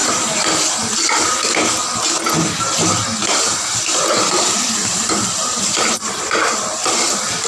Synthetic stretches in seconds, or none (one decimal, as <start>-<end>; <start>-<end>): 0.0-0.7; 3.5-7.1